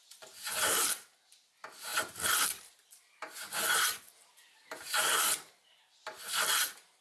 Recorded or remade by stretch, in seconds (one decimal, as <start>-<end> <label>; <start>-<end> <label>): 0.0-7.0 recorded